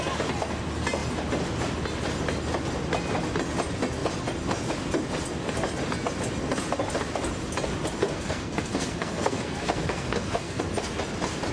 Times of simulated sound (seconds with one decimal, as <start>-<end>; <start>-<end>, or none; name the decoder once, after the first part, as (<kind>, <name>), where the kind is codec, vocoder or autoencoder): 8.0-10.6 (codec, SNAC)